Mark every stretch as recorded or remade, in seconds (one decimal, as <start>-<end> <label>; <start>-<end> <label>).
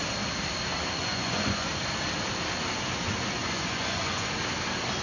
0.0-1.0 recorded; 1.0-1.7 remade; 1.7-3.4 recorded; 3.4-4.3 remade; 4.3-5.0 recorded